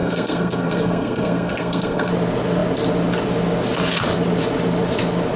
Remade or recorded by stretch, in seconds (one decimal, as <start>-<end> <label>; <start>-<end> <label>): 0.0-2.1 remade; 2.1-5.4 recorded